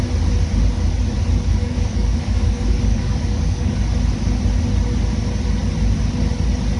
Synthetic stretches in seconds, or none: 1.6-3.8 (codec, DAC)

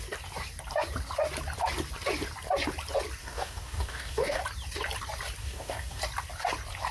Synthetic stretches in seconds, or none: 3.2-4.4 (codec, DAC); 5.4-6.0

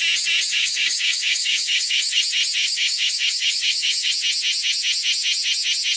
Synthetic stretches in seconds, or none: 0.5-2.2 (codec, DAC); 2.6-4.1

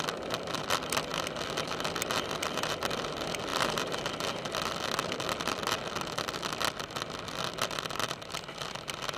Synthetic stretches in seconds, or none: none

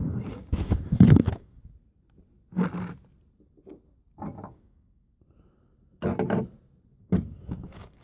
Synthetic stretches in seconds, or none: 0.0-1.6 (codec, DAC); 4.5-5.1; 7.0-8.0

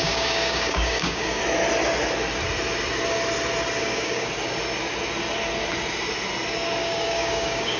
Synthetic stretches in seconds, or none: 0.0-1.4 (codec, DAC); 3.8-4.3; 6.8-7.8